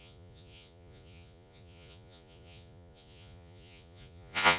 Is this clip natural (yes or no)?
no